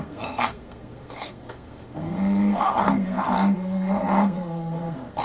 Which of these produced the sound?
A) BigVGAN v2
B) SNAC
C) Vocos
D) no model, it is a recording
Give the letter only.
B